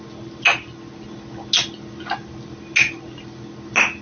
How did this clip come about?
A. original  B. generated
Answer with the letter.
A